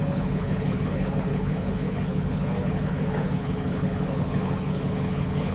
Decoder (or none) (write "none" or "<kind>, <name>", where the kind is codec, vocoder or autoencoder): codec, HILCodec